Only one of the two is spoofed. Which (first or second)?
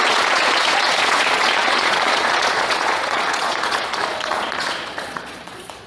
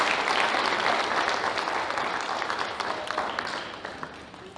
first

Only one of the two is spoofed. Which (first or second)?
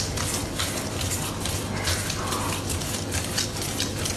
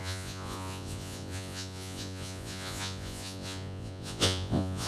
second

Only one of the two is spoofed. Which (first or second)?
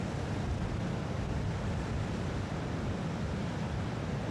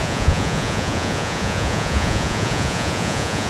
second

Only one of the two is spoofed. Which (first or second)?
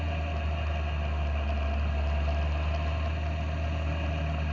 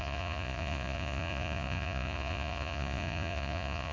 second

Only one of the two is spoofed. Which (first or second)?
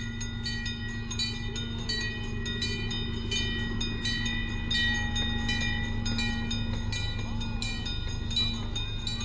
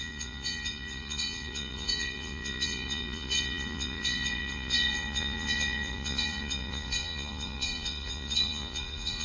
second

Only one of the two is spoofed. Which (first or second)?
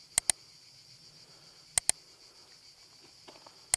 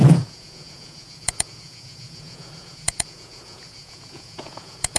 second